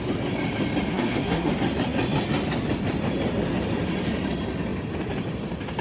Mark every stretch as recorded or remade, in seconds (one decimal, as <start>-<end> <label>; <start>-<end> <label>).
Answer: 0.0-0.9 recorded; 0.9-1.5 remade; 1.5-5.8 recorded